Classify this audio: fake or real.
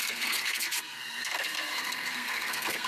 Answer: fake